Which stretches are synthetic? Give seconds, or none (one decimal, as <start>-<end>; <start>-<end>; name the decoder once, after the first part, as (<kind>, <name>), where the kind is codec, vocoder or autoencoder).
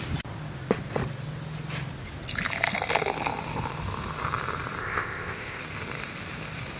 4.8-5.6 (codec, ZipCodec)